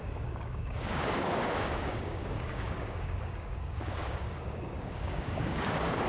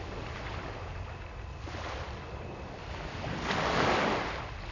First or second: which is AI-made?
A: first